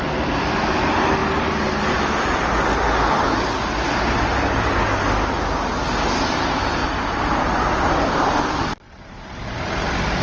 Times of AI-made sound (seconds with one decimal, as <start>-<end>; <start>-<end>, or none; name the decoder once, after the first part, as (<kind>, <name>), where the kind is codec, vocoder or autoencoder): none